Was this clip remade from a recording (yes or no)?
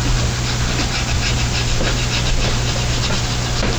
no